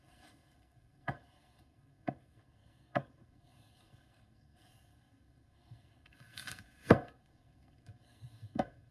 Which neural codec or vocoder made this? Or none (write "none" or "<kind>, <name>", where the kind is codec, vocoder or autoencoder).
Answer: codec, SNAC